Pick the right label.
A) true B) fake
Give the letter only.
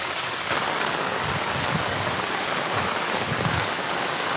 B